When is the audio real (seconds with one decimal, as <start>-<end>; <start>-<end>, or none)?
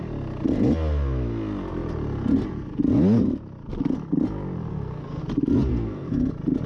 0.0-4.7; 5.2-5.7; 6.3-6.7